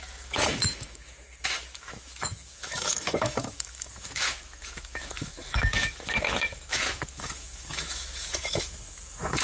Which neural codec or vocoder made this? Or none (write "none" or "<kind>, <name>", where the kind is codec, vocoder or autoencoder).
autoencoder, DAC-VAE